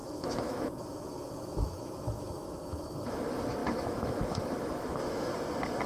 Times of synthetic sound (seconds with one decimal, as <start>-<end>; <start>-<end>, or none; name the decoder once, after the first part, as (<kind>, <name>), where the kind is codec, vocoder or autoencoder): 0.0-5.3 (autoencoder, DAC-VAE)